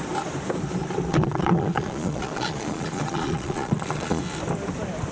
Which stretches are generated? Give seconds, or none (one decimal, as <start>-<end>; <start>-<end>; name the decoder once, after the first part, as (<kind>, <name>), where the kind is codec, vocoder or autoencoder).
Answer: 1.1-4.2 (vocoder, Vocos)